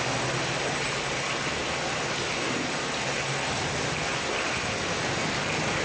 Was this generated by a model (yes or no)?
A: no